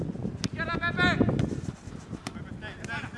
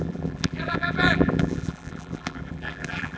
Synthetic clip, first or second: second